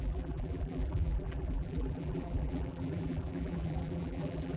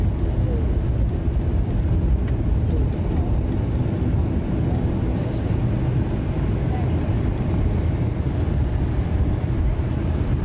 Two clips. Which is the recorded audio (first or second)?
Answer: second